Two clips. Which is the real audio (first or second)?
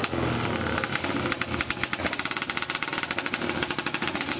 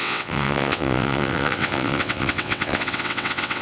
first